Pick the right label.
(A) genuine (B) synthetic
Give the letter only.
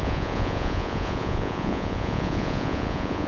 B